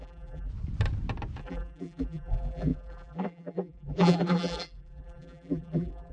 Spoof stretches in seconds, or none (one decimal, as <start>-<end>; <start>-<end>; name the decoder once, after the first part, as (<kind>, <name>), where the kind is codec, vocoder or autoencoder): 0.0-0.5 (vocoder, BigVGAN v2); 1.4-6.1